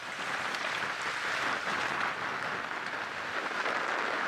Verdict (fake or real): real